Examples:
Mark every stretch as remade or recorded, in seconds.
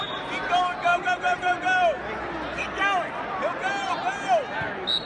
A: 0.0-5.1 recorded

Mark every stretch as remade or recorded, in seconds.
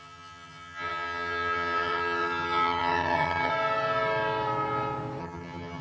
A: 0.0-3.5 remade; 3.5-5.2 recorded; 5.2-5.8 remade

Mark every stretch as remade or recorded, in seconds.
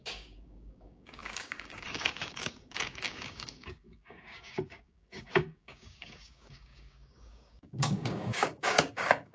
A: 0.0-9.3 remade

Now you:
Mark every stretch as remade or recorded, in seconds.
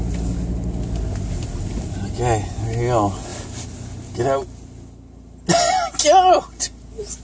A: 0.0-7.2 recorded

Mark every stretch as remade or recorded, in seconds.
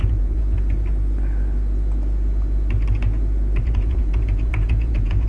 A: 0.0-0.4 remade; 0.4-3.6 recorded; 3.6-5.3 remade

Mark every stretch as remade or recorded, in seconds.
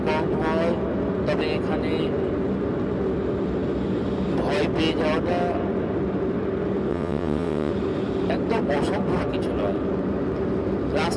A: 0.0-6.9 recorded; 6.9-7.7 remade; 7.7-11.2 recorded